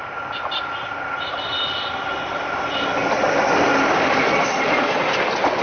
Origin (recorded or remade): recorded